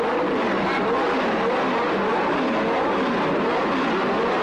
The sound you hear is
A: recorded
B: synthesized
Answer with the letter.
A